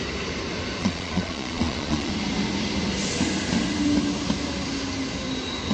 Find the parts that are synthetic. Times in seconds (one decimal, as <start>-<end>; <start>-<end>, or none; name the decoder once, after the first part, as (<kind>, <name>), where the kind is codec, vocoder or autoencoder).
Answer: 0.8-2.1 (vocoder, Vocos)